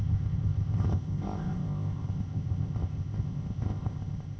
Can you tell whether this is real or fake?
fake